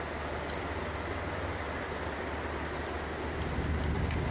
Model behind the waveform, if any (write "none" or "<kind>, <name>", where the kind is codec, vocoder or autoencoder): none